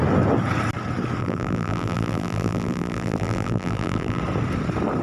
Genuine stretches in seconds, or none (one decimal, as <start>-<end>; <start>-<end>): 0.0-1.2; 4.2-5.0